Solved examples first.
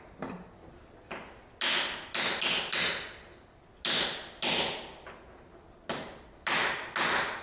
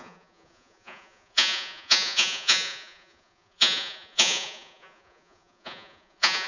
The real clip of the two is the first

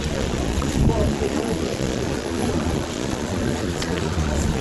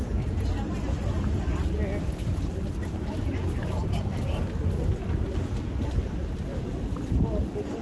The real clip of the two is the second